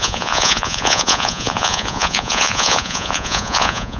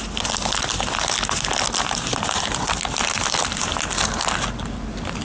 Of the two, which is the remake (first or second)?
first